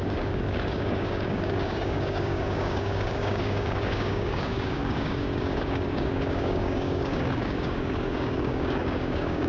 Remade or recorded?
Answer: remade